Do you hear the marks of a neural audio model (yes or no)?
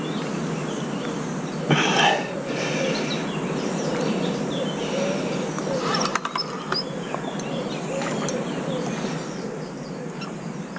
no